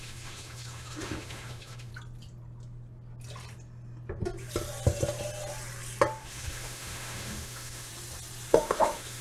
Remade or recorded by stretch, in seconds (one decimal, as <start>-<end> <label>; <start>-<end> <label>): 0.0-1.9 remade; 1.9-6.2 recorded; 6.2-7.9 remade; 7.9-8.5 recorded; 8.5-9.2 remade